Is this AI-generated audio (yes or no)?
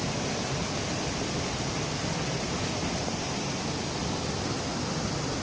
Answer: no